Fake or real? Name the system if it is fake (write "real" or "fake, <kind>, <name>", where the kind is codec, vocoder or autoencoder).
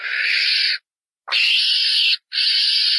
real